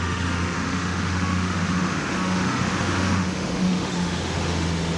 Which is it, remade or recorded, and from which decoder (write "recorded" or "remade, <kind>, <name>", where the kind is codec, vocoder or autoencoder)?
remade, autoencoder, DAC-VAE